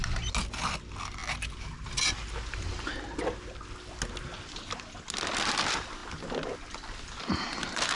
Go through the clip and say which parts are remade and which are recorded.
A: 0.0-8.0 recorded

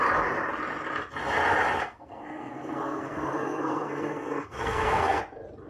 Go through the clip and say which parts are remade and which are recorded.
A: 0.0-1.8 recorded; 1.8-5.2 remade; 5.2-5.7 recorded

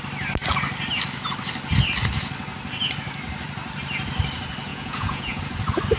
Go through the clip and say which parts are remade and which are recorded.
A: 0.0-4.7 recorded; 4.7-5.4 remade; 5.4-6.0 recorded

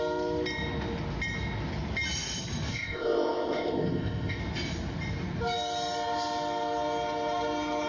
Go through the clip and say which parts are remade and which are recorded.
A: 0.0-2.7 recorded; 2.7-4.4 remade; 4.4-7.9 recorded

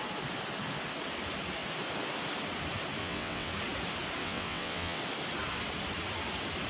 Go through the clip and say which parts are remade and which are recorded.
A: 0.0-3.0 recorded; 3.0-3.5 remade; 3.5-4.2 recorded; 4.2-5.0 remade; 5.0-6.7 recorded

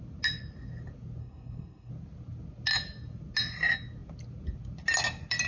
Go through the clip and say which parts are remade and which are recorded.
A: 0.0-1.2 recorded; 1.2-1.9 remade; 1.9-5.5 recorded

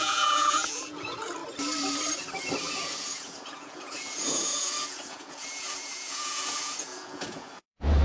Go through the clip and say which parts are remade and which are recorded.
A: 0.0-1.4 remade; 1.4-2.6 recorded; 2.6-8.0 remade

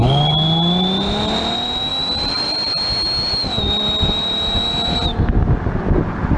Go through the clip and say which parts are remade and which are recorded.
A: 0.0-6.4 recorded